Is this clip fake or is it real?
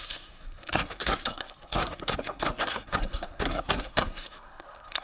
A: fake